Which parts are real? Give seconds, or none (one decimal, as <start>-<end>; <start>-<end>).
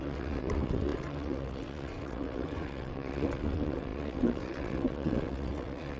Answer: none